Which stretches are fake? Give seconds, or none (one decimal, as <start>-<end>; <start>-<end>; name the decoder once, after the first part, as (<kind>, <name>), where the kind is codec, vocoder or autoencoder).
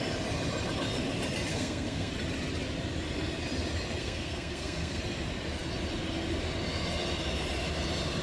1.5-2.1 (codec, SNAC); 4.0-5.0